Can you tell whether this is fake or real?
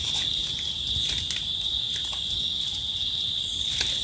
real